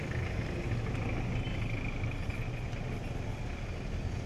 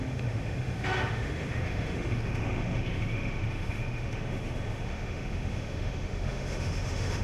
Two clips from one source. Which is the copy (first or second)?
second